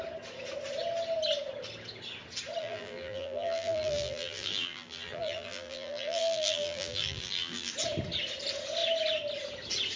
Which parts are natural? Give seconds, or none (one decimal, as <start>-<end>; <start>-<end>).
0.0-2.6; 7.7-10.0